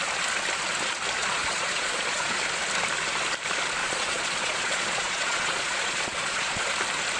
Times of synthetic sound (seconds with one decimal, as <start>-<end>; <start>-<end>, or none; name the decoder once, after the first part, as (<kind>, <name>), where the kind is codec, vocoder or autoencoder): 1.2-2.4 (vocoder, Vocos); 3.8-6.7